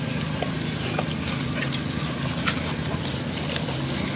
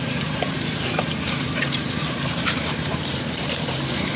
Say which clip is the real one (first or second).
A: first